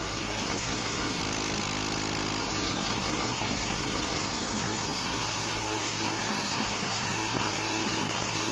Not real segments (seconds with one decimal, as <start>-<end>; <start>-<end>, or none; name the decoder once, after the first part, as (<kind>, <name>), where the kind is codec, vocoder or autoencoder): 0.0-1.2 (codec, SNAC); 2.4-8.5